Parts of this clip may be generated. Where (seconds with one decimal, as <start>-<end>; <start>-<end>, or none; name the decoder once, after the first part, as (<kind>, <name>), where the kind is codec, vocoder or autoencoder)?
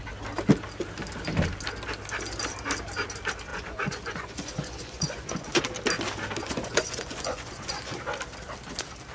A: 3.5-5.6 (vocoder, Vocos); 6.4-8.0